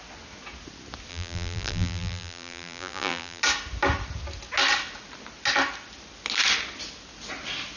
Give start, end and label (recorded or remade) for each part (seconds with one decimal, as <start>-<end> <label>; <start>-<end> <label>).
0.0-1.1 recorded; 1.1-3.4 remade; 3.4-7.8 recorded